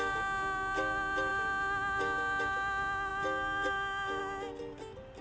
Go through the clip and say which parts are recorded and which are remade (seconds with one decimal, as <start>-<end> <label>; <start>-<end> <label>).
0.0-5.2 recorded